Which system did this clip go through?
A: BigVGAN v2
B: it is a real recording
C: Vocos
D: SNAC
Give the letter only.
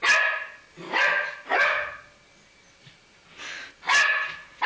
B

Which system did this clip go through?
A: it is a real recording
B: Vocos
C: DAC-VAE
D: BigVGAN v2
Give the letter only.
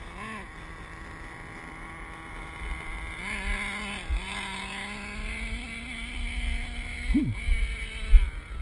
A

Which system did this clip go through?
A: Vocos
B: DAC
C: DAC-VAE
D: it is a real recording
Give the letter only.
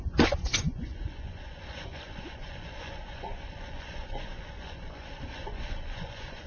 A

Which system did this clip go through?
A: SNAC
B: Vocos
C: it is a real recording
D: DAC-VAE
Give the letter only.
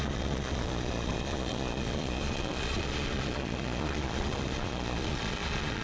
B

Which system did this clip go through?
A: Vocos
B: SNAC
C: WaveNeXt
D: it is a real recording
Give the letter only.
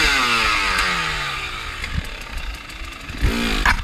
D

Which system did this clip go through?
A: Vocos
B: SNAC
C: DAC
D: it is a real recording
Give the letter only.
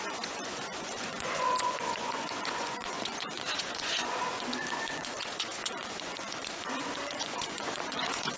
A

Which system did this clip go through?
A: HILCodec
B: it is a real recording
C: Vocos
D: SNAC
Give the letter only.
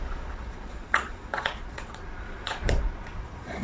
C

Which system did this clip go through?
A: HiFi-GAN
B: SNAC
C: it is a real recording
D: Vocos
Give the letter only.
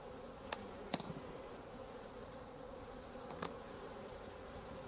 D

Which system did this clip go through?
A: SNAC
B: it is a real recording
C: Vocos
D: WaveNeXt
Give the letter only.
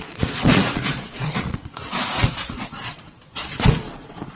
C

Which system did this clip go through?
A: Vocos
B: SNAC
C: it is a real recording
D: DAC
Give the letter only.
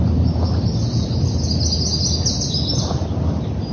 C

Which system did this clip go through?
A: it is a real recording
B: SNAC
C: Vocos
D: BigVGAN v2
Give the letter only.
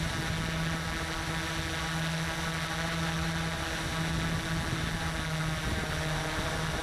A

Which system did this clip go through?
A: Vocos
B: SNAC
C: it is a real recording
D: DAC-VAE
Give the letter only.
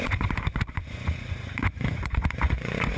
A